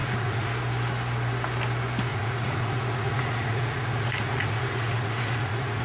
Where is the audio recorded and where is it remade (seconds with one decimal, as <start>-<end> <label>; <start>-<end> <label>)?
0.0-0.5 remade; 0.5-2.1 recorded; 2.1-5.8 remade